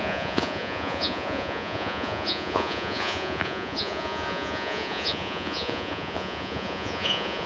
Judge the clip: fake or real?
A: fake